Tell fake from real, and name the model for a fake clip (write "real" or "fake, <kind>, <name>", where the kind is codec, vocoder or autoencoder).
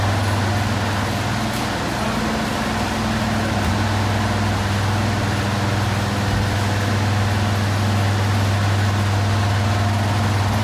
real